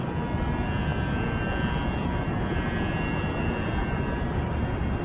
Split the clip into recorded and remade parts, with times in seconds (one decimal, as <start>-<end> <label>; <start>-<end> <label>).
0.0-5.0 recorded

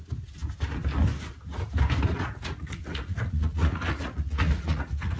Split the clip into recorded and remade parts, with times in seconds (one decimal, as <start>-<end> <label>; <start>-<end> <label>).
0.0-2.1 recorded; 2.1-5.2 remade

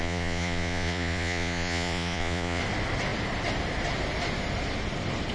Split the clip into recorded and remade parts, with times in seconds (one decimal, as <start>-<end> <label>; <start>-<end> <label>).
0.0-2.6 remade; 2.6-5.3 recorded